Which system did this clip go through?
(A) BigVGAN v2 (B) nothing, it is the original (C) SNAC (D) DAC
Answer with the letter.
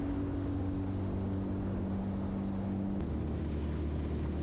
B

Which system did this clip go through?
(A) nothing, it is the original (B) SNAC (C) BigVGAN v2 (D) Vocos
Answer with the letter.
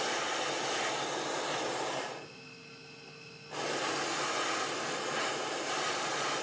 A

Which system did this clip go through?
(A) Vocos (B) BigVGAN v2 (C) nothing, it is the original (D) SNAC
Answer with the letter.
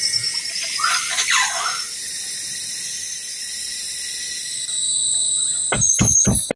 C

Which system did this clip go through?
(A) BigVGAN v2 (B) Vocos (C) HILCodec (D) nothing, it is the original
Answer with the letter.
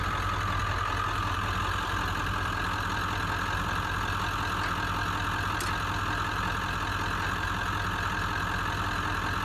D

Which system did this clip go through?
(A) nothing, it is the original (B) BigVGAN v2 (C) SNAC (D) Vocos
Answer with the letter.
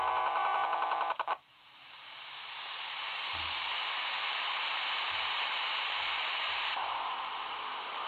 B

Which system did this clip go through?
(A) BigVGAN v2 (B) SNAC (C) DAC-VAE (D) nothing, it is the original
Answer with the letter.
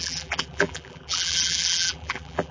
A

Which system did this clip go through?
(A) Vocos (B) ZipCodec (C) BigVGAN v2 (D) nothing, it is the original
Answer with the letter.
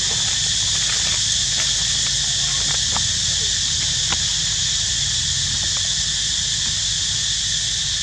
D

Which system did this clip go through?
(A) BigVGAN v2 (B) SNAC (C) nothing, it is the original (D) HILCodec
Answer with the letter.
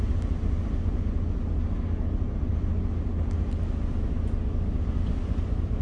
C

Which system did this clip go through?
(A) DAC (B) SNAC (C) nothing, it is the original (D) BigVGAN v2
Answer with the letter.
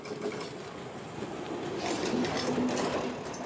C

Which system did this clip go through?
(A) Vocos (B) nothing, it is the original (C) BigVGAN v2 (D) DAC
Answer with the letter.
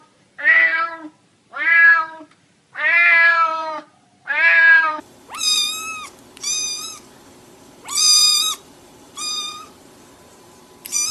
C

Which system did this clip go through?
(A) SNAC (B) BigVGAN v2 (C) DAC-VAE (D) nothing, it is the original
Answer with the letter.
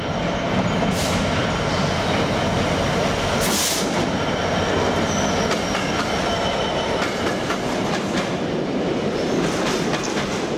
D